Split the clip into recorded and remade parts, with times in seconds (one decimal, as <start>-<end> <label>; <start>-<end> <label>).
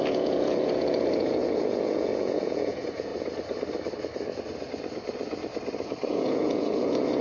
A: 0.0-3.1 remade; 3.1-6.1 recorded; 6.1-7.2 remade